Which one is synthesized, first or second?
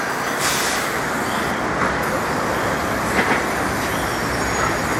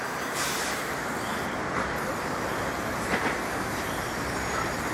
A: second